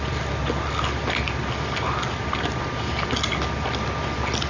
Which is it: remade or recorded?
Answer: recorded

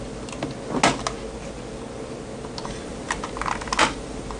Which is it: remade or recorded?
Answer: recorded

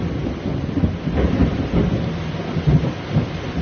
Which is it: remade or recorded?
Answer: recorded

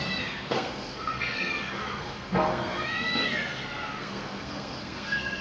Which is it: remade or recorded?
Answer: remade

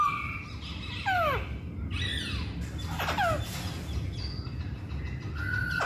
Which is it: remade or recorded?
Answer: recorded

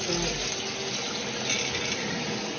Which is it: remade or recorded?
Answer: recorded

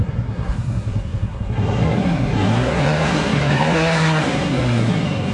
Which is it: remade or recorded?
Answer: remade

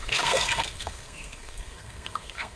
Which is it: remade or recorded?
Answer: remade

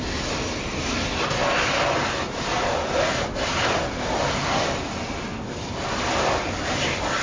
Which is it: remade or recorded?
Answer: recorded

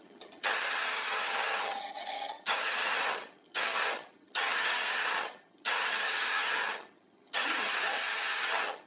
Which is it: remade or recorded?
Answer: remade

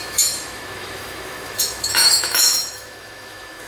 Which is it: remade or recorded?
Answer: remade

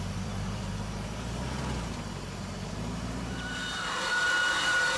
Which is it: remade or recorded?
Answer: remade